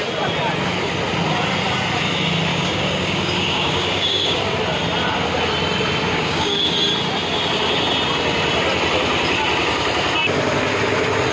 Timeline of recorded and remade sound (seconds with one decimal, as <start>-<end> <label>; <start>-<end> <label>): 0.0-2.5 recorded; 2.5-4.4 remade; 4.4-6.1 recorded; 6.1-6.7 remade; 6.7-11.3 recorded